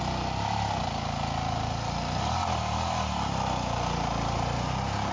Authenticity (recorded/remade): recorded